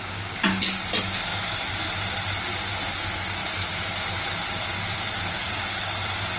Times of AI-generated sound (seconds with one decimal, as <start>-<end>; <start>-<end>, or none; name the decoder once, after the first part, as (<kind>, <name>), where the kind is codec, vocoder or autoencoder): 1.3-2.1 (vocoder, BigVGAN v2); 3.4-4.2; 4.9-5.5